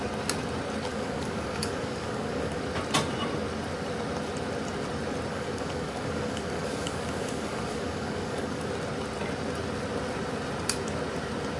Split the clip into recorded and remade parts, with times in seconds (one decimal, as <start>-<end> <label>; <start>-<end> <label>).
0.0-0.9 recorded; 0.9-2.6 remade; 2.6-5.3 recorded; 5.3-8.7 remade; 8.7-11.6 recorded